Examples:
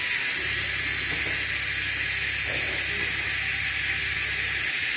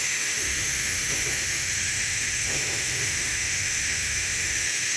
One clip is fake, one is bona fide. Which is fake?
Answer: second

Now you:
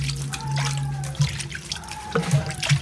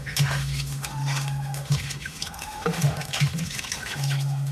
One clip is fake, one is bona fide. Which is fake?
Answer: second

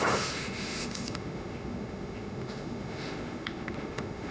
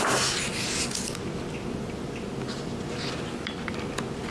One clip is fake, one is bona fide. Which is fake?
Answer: first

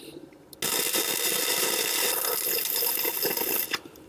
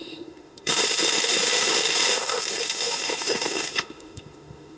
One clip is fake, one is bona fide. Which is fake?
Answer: second